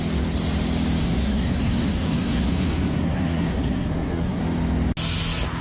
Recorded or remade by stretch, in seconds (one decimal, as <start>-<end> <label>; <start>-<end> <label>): 0.0-1.0 recorded; 1.0-4.4 remade; 4.4-5.6 recorded

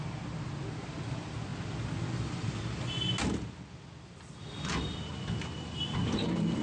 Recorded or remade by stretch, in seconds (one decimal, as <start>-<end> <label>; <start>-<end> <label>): 0.0-6.6 recorded

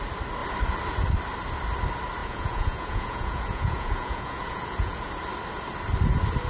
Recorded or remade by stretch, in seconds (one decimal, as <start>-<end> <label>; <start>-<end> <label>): 0.0-2.2 recorded; 2.2-5.1 remade; 5.1-6.5 recorded

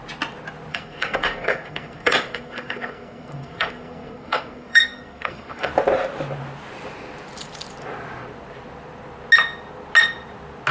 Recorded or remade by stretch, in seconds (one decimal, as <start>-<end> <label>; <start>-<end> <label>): 0.0-0.7 recorded; 0.7-5.7 remade; 5.7-10.7 recorded

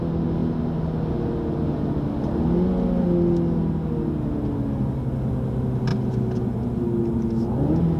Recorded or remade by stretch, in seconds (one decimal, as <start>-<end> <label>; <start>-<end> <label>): 0.0-8.0 recorded